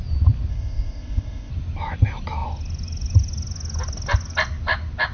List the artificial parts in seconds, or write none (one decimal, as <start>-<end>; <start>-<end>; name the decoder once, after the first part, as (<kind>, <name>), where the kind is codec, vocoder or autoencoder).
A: 0.5-1.5 (codec, ZipCodec)